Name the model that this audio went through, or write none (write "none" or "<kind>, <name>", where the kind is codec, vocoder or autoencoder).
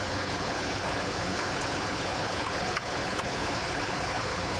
codec, HILCodec